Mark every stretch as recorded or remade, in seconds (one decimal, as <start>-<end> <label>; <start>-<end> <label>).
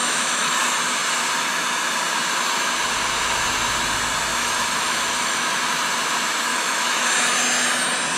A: 0.0-0.5 remade; 0.5-4.3 recorded; 4.3-5.5 remade; 5.5-6.5 recorded; 6.5-7.1 remade; 7.1-8.2 recorded